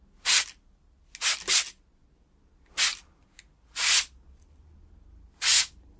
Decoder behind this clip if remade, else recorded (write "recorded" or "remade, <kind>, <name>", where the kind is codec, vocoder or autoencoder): recorded